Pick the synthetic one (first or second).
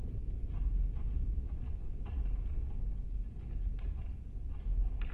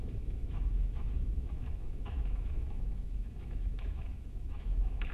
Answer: second